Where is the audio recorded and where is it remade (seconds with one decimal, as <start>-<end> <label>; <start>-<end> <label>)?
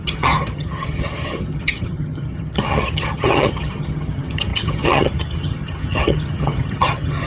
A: 0.0-7.3 remade